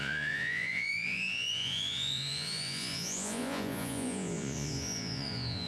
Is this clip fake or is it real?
fake